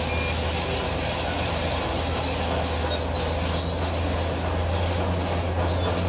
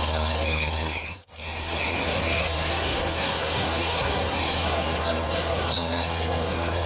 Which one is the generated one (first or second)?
second